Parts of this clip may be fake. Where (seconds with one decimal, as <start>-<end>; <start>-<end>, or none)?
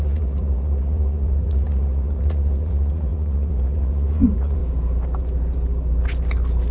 0.0-4.6